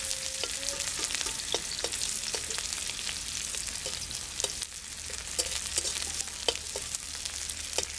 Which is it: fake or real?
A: real